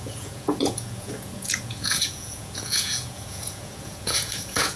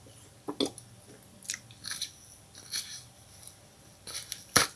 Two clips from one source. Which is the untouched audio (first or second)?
second